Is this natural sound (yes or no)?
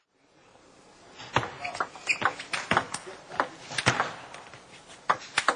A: yes